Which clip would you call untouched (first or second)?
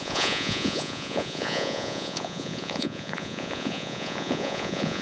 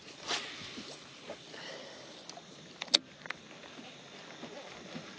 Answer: second